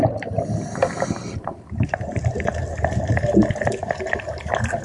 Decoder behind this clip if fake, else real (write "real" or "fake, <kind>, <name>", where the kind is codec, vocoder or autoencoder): real